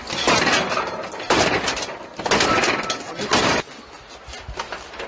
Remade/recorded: recorded